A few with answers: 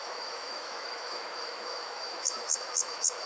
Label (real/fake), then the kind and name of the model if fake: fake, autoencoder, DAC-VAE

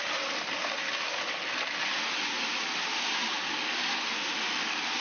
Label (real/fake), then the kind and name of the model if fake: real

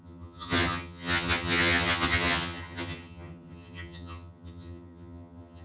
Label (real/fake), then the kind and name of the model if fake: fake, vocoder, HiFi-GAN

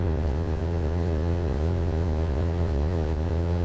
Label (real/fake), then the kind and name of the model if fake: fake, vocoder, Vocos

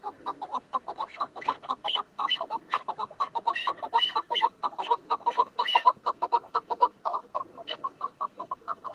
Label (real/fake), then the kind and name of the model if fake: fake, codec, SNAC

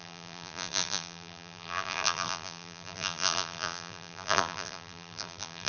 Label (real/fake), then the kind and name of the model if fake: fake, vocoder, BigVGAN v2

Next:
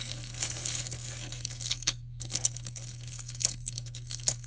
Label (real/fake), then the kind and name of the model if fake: fake, codec, SNAC